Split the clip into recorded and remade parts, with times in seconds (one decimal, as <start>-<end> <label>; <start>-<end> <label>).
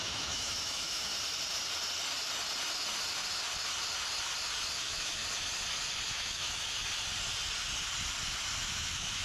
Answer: 0.0-1.1 remade; 1.1-4.8 recorded; 4.8-5.2 remade; 5.2-6.1 recorded; 6.1-6.8 remade; 6.8-8.6 recorded; 8.6-9.2 remade